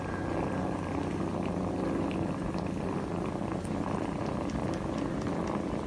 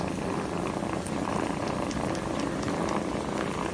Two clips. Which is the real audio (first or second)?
first